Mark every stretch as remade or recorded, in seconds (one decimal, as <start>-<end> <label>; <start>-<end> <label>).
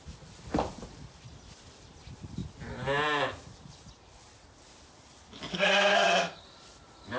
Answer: 0.0-5.5 recorded; 5.5-6.4 remade; 6.4-7.2 recorded